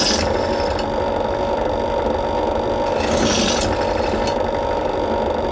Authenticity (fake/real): real